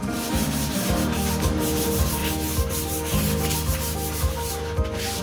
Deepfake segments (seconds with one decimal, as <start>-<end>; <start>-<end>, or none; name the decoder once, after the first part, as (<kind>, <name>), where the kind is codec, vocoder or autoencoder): 0.0-2.2 (vocoder, BigVGAN v2)